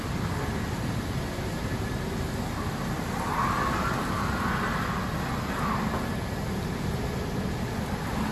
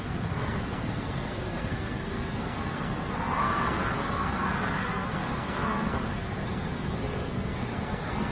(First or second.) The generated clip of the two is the second